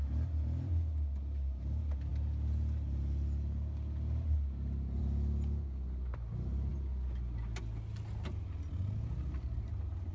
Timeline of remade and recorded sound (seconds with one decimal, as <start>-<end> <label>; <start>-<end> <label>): 0.0-10.1 recorded